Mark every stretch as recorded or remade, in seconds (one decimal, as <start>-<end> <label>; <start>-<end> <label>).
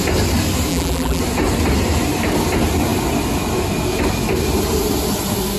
0.0-0.7 recorded; 0.7-1.2 remade; 1.2-5.6 recorded